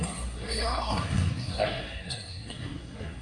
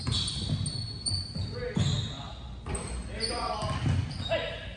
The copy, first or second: first